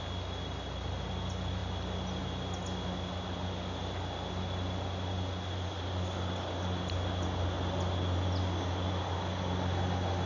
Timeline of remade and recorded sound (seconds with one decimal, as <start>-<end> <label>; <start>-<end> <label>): 0.0-10.3 recorded